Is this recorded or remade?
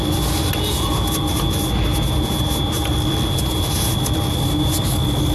recorded